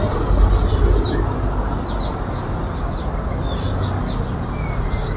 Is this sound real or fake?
real